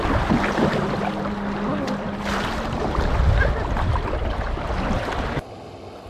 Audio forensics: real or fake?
real